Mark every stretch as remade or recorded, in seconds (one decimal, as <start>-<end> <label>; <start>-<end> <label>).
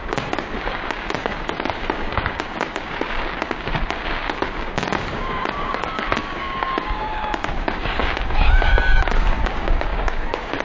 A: 0.0-10.6 remade